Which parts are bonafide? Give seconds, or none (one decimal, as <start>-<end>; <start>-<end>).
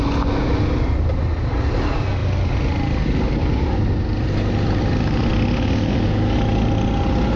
0.0-7.4